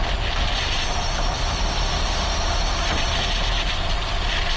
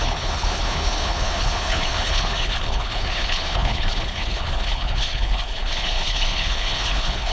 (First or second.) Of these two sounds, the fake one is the second